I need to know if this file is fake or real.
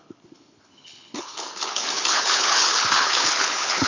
fake